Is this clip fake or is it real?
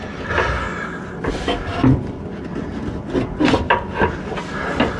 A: real